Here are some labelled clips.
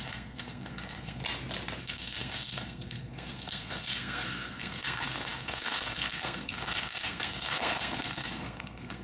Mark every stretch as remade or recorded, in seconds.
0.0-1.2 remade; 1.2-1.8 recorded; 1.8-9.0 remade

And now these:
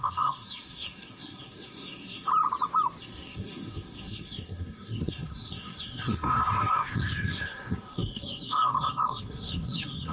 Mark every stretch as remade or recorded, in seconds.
0.0-2.3 remade; 2.3-3.0 recorded; 3.0-10.1 remade

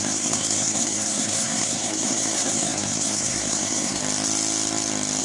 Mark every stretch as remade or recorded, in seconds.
0.0-4.0 remade; 4.0-5.2 recorded

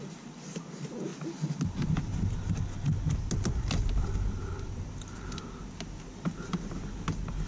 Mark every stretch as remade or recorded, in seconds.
0.0-7.5 recorded

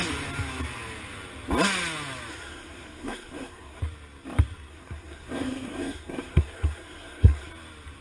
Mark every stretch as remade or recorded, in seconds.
0.0-2.3 recorded; 2.3-3.8 remade; 3.8-4.7 recorded; 4.7-7.5 remade; 7.5-8.0 recorded

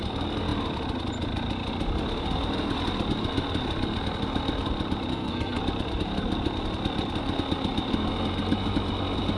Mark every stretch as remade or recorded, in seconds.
0.0-5.1 recorded; 5.1-5.6 remade; 5.6-9.4 recorded

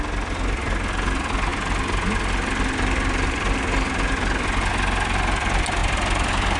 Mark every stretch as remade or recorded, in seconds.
0.0-6.6 recorded

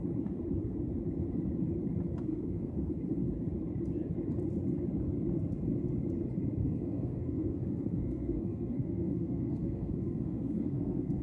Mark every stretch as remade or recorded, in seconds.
0.0-2.3 recorded; 2.3-2.9 remade; 2.9-6.6 recorded; 6.6-11.2 remade